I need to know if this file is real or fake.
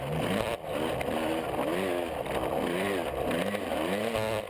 real